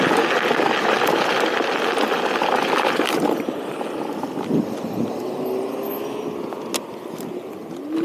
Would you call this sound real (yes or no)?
yes